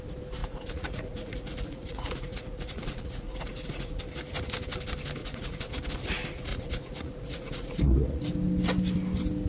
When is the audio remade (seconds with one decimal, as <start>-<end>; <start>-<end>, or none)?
0.4-4.0; 5.2-5.7; 6.5-8.2